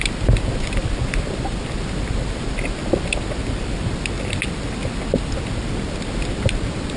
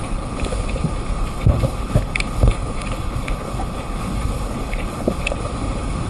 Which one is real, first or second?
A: first